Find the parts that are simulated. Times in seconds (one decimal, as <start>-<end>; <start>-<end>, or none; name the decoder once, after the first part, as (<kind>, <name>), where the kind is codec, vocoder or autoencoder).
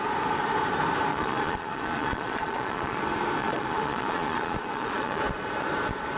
1.1-3.0 (vocoder, Vocos); 3.4-5.2